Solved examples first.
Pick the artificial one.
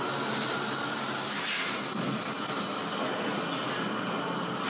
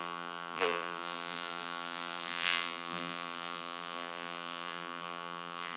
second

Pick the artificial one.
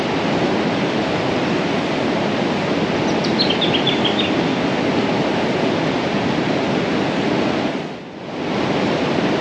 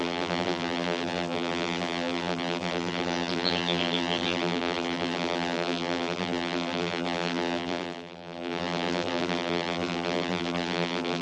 second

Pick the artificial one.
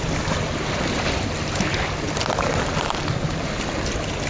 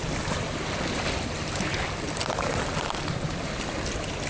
second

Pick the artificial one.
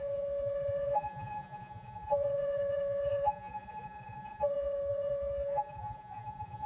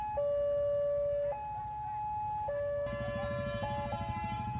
first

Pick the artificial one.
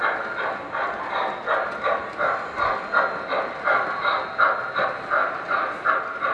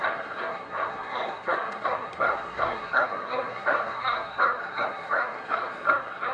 second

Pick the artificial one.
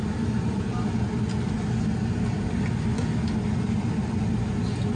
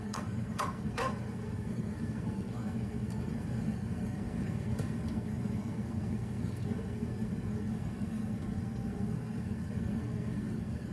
second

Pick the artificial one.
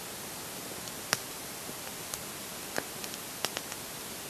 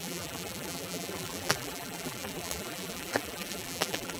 second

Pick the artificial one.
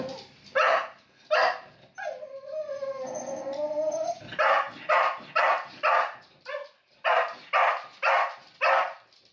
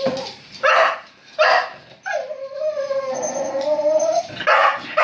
second